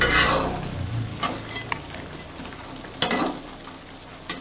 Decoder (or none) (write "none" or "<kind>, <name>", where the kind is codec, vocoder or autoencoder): none